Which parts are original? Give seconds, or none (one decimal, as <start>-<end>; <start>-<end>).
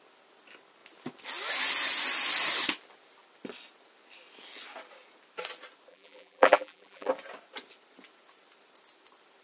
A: 0.0-5.9; 7.1-9.4